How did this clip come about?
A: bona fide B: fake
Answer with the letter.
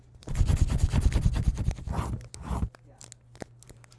A